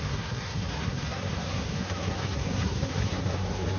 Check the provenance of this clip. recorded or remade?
remade